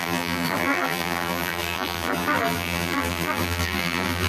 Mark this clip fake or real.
fake